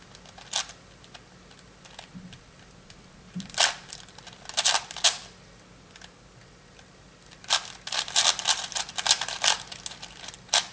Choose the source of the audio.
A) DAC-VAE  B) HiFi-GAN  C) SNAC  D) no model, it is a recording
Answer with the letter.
D